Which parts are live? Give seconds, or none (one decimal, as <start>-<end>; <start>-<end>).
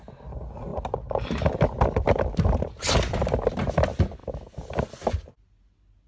0.0-6.1